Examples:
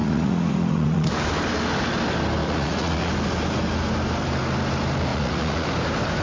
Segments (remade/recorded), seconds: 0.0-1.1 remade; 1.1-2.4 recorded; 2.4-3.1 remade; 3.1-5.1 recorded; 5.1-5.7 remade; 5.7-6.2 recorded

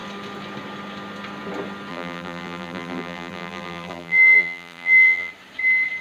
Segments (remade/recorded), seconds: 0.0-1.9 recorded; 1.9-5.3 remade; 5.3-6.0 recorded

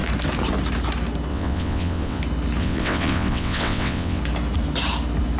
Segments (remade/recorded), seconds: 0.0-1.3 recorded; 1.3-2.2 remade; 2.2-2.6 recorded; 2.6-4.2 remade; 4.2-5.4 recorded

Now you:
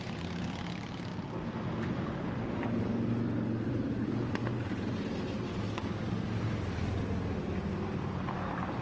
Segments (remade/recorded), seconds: 0.0-1.1 remade; 1.1-3.7 recorded; 3.7-5.5 remade; 5.5-8.8 recorded

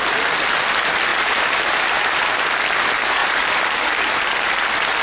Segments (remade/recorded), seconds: 0.0-1.1 recorded; 1.1-2.2 remade; 2.2-3.2 recorded; 3.2-4.6 remade; 4.6-5.0 recorded

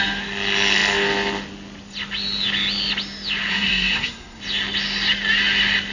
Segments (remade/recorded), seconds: 0.0-3.5 recorded; 3.5-4.4 remade; 4.4-5.9 recorded

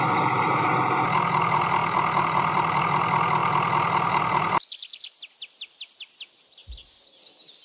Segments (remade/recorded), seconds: 0.0-7.6 recorded

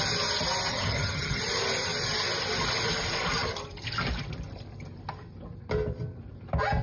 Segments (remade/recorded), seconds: 0.0-0.7 recorded; 0.7-1.4 remade; 1.4-6.8 recorded